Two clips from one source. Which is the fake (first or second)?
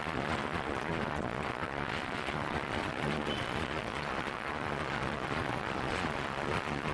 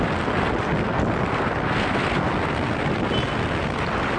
first